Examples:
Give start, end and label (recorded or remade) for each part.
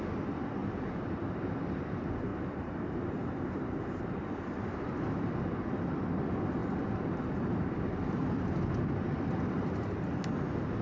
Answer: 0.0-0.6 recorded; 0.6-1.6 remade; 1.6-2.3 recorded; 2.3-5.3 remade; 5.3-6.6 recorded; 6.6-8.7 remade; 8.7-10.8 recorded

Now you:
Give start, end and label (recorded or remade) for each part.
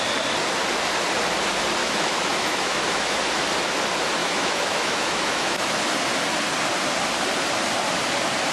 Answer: 0.0-1.8 recorded; 1.8-3.2 remade; 3.2-4.2 recorded; 4.2-5.8 remade; 5.8-8.5 recorded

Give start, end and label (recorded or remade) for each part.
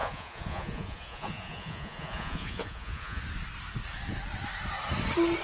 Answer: 0.0-3.2 remade; 3.2-5.4 recorded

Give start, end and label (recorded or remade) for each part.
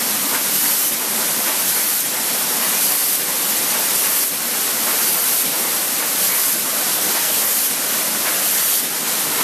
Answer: 0.0-6.9 recorded; 6.9-7.4 remade; 7.4-9.4 recorded